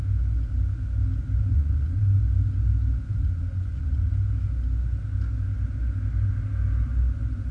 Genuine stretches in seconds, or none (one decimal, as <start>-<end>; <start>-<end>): 0.0-1.5; 2.0-3.2; 4.1-7.5